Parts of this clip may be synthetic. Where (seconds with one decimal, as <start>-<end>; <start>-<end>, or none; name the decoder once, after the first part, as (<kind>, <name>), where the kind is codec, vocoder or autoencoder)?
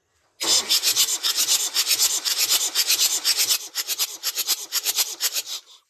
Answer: 0.0-0.5 (vocoder, BigVGAN v2); 4.0-5.9